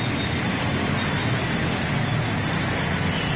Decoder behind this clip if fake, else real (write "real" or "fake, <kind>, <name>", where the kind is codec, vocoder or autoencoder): real